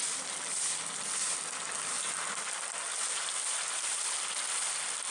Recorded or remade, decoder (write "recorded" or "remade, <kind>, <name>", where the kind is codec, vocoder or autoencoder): recorded